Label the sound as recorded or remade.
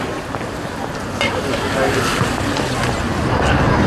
recorded